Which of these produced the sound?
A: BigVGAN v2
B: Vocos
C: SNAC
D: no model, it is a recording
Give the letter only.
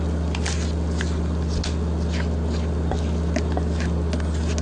D